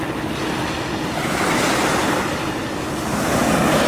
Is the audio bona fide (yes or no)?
yes